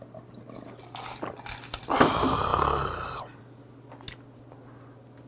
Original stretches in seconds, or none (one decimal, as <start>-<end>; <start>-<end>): 0.0-5.3